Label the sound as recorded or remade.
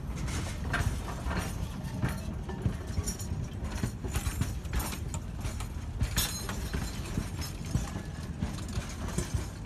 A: recorded